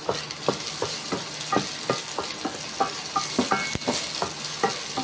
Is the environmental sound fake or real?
real